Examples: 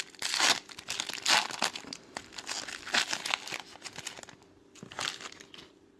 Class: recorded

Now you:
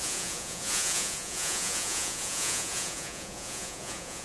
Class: remade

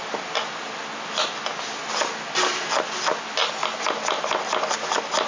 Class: recorded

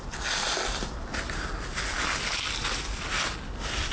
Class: recorded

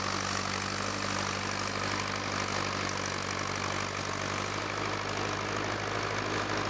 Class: recorded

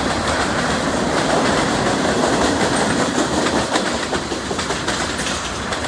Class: recorded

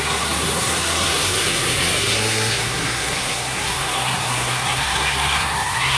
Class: remade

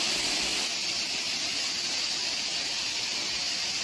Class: recorded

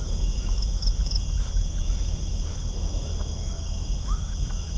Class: remade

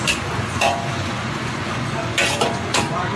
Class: remade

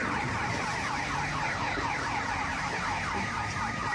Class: recorded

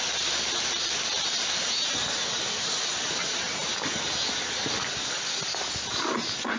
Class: recorded